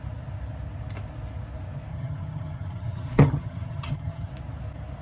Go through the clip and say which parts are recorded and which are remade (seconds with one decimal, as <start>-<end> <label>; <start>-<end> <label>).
0.0-1.9 recorded; 1.9-4.3 remade; 4.3-5.0 recorded